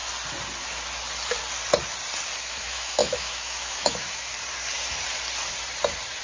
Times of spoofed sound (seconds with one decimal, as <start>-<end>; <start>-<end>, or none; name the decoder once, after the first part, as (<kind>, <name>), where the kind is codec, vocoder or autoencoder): 2.4-4.3 (autoencoder, DAC-VAE)